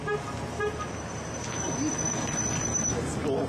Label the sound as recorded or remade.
recorded